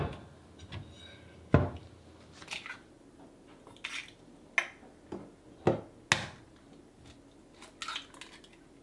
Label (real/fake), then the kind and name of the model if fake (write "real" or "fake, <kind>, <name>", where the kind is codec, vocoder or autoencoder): real